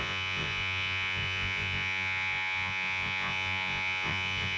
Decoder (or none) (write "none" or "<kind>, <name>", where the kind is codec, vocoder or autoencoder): vocoder, Vocos